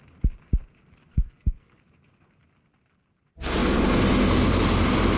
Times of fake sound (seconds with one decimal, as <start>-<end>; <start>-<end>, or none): 1.1-1.8